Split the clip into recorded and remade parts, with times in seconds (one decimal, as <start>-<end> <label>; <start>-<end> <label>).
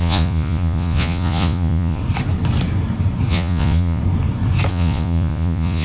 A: 0.0-2.0 remade; 2.0-3.3 recorded; 3.3-4.0 remade; 4.0-4.7 recorded; 4.7-5.8 remade